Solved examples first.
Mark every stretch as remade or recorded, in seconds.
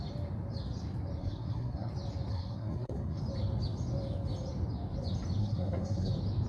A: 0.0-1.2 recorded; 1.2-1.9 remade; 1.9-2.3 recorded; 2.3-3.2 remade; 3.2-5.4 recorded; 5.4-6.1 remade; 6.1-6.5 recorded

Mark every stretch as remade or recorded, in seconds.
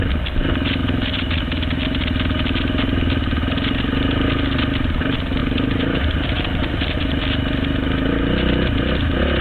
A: 0.0-0.8 recorded; 0.8-1.4 remade; 1.4-5.4 recorded; 5.4-7.2 remade; 7.2-9.4 recorded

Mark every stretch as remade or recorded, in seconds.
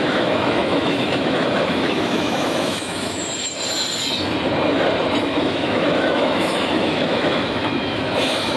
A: 0.0-3.2 remade; 3.2-5.2 recorded; 5.2-8.6 remade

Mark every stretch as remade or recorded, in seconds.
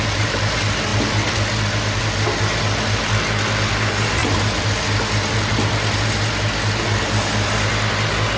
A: 0.0-8.4 recorded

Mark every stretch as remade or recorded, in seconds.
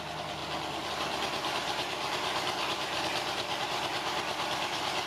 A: 0.0-1.6 recorded; 1.6-3.7 remade; 3.7-5.1 recorded